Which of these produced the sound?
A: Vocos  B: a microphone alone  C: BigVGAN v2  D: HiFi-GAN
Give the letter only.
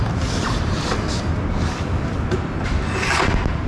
B